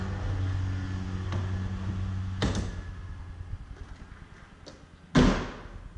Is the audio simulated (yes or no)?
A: no